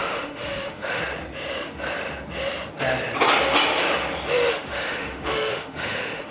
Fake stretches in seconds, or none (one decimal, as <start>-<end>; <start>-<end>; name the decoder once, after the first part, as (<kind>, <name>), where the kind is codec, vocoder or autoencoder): 0.0-1.0 (autoencoder, DAC-VAE); 4.5-6.3